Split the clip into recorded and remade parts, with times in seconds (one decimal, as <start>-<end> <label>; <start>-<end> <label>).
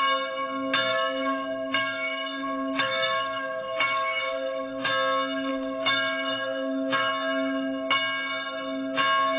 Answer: 0.0-0.9 recorded; 0.9-4.9 remade; 4.9-5.5 recorded; 5.5-7.1 remade; 7.1-9.4 recorded